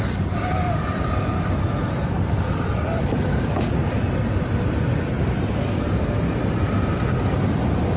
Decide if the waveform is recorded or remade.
recorded